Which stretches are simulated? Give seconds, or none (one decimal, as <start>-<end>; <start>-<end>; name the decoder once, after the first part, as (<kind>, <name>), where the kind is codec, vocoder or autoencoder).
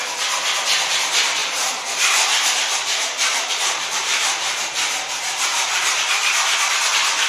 1.4-5.8 (vocoder, BigVGAN v2)